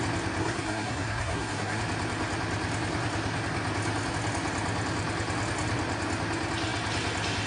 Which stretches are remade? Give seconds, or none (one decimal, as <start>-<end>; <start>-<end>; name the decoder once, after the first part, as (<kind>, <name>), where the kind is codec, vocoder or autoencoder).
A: 0.4-1.8 (codec, SNAC)